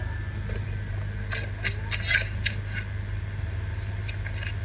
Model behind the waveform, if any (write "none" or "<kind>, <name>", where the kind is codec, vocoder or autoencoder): none